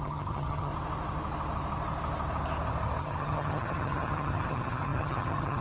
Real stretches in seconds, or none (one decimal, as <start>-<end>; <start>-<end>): 0.7-3.0